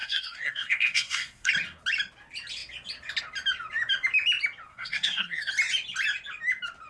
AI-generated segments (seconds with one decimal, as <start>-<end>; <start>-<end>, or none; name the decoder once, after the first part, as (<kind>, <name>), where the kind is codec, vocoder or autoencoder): 0.0-1.5 (codec, SNAC); 4.7-5.5